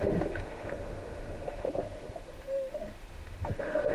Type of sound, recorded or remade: remade